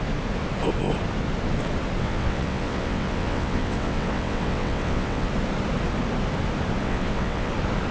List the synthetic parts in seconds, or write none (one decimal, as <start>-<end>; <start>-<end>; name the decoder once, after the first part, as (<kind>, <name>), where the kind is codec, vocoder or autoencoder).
2.0-5.3 (vocoder, WaveNeXt); 6.8-7.5